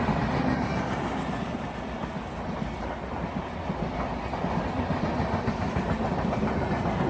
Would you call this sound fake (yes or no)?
no